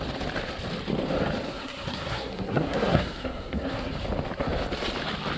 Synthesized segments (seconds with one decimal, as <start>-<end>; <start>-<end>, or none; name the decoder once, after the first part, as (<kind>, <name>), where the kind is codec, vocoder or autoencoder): 1.5-3.9 (codec, SNAC)